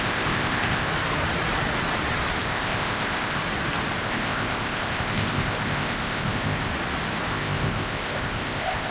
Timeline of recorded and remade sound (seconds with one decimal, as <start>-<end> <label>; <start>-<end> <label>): 0.0-0.9 remade; 0.9-2.4 recorded; 2.4-3.4 remade; 3.4-4.0 recorded; 4.0-6.7 remade; 6.7-7.3 recorded; 7.3-8.9 remade